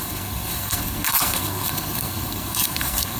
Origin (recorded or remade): remade